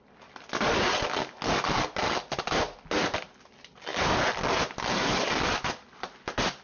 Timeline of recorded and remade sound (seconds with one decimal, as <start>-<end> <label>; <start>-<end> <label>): 0.0-6.6 recorded